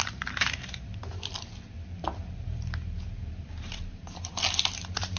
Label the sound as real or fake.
fake